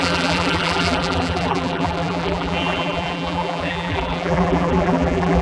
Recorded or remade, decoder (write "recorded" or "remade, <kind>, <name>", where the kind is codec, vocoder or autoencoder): remade, vocoder, BigVGAN v2